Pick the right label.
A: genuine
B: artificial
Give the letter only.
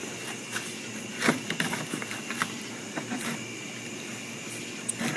A